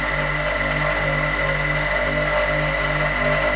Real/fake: real